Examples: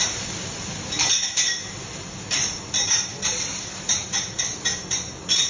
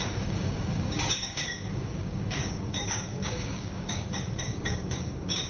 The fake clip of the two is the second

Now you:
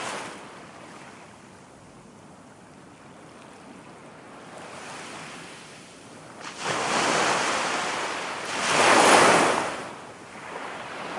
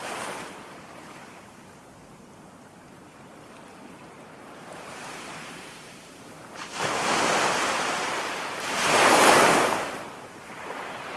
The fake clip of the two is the second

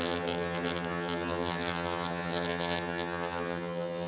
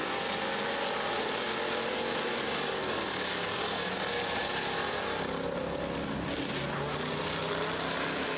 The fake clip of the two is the first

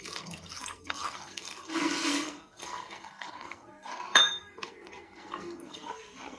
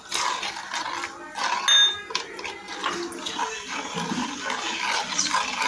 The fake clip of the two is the first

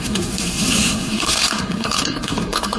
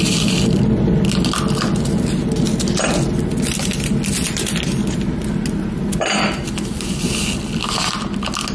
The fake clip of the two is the first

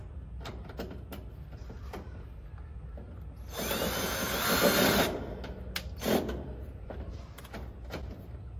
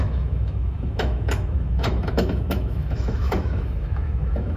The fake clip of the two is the second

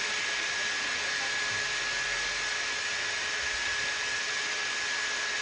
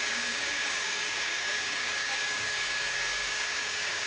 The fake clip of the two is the second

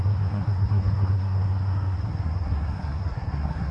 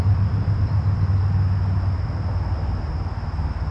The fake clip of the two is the first